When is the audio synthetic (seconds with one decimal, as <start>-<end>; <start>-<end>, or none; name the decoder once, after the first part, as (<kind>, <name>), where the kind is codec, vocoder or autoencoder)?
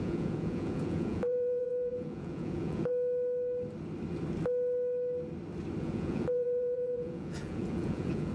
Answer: 0.0-2.9 (vocoder, Vocos); 5.8-8.3